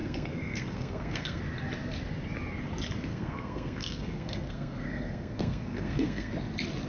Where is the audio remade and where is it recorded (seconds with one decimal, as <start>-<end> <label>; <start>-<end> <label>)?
0.0-1.4 remade; 1.4-3.1 recorded; 3.1-6.3 remade; 6.3-6.9 recorded